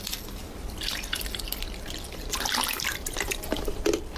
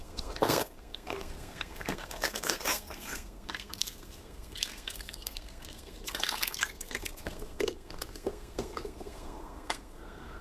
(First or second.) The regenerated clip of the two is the second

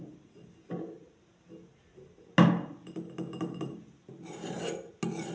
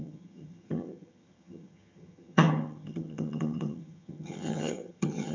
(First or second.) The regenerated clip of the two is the second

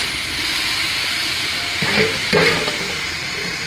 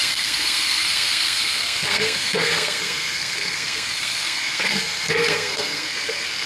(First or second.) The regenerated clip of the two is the second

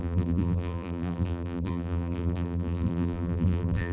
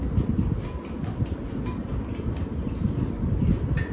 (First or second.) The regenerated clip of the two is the first